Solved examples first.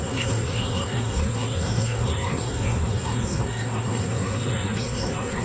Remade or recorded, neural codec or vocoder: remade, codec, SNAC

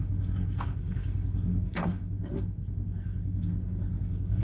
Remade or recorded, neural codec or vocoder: remade, codec, SNAC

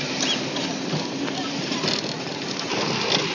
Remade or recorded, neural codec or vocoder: recorded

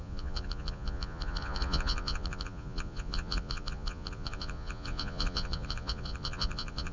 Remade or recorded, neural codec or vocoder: remade, vocoder, Vocos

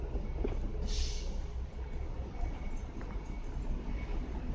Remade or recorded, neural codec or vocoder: recorded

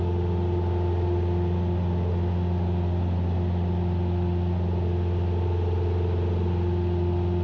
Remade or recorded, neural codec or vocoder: recorded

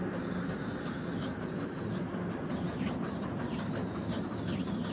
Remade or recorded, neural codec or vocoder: recorded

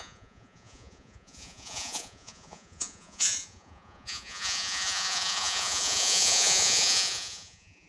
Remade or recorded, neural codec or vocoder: remade, vocoder, Vocos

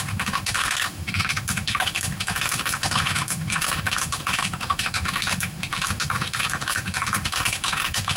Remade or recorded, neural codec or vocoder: remade, autoencoder, DAC-VAE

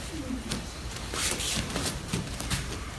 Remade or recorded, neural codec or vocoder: recorded